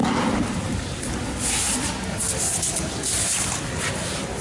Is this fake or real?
real